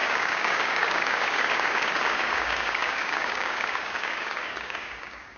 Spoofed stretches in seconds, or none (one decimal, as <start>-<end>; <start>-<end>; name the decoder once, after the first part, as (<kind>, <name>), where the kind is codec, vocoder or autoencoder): 0.0-5.4 (codec, DAC)